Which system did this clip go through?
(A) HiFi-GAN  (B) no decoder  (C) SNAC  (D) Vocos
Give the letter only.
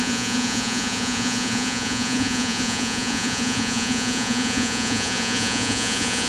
D